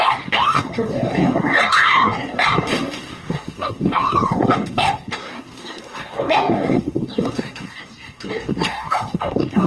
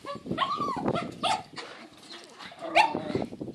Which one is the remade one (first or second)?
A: first